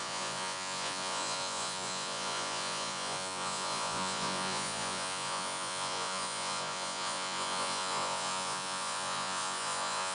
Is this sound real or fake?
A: fake